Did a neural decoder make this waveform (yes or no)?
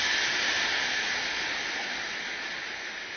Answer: no